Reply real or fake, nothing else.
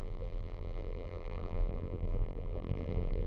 fake